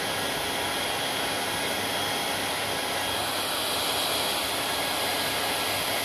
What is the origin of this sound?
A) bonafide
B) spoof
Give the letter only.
A